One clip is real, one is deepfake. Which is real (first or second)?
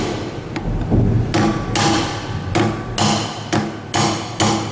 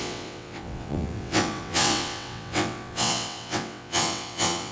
first